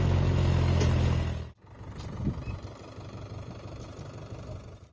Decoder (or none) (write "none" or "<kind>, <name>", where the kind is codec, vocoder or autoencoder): none